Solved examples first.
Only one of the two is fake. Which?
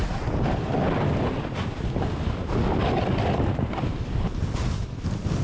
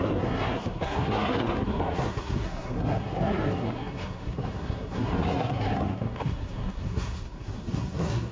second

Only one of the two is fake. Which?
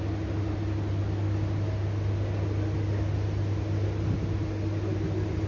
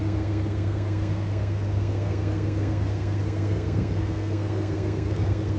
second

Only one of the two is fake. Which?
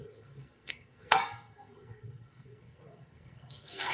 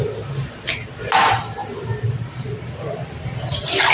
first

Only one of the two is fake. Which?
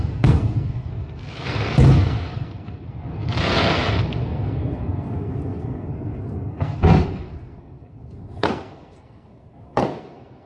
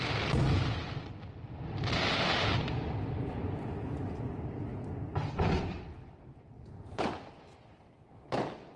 first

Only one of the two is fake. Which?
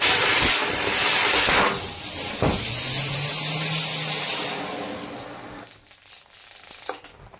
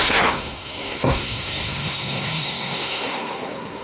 second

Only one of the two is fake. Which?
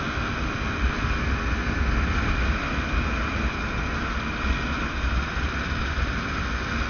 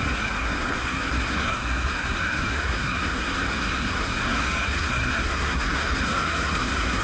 second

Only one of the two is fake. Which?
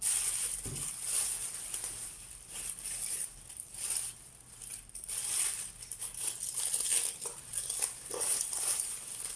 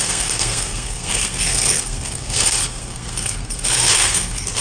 second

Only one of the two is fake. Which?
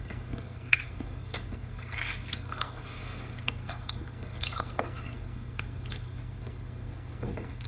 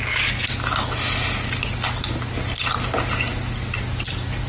first